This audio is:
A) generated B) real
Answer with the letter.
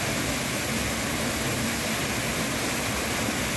B